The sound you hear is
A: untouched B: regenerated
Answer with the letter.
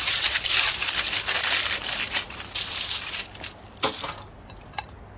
A